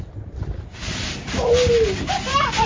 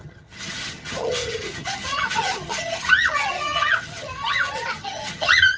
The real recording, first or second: first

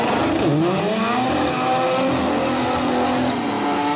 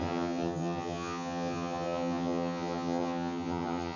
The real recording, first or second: first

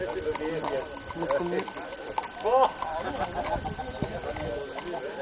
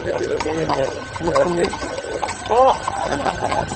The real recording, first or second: first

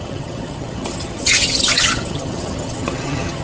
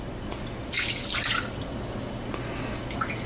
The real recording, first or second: second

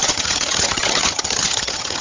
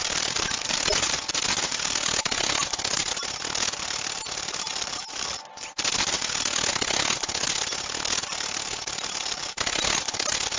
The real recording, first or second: second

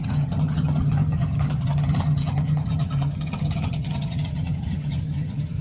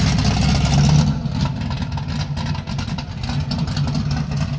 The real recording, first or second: second